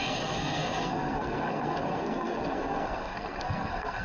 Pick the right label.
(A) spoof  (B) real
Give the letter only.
A